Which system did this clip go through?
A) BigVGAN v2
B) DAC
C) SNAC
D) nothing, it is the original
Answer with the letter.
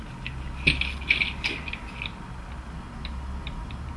D